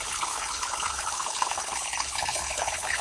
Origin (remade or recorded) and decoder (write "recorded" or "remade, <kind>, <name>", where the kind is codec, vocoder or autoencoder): remade, codec, HILCodec